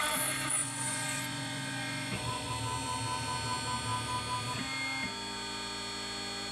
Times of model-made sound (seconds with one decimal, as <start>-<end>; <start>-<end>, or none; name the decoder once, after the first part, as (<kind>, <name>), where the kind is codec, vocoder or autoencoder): 0.6-2.5 (vocoder, Vocos)